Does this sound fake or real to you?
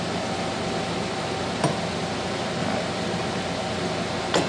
real